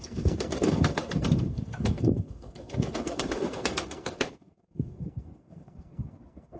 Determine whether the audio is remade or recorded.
remade